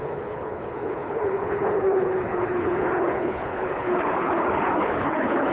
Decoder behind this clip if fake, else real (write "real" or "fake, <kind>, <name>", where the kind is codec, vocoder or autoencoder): fake, codec, HILCodec